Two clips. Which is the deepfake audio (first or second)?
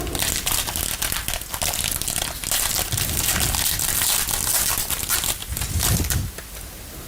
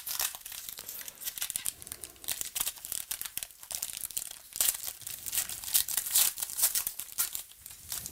second